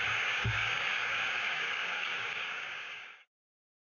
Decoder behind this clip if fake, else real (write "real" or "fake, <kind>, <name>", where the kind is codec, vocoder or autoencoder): fake, codec, DAC